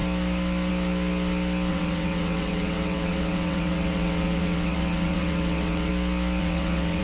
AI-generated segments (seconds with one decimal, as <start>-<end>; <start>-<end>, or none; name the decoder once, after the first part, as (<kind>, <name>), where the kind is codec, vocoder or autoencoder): 1.7-5.9 (vocoder, WaveNeXt); 6.4-7.0